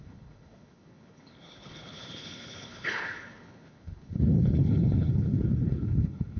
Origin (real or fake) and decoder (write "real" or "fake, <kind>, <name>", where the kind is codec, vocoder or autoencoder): fake, codec, HILCodec